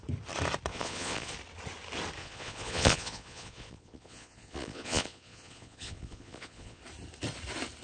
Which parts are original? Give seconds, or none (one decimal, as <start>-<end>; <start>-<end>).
0.0-0.7; 1.3-2.2; 6.8-7.8